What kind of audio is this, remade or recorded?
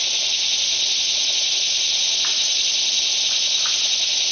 recorded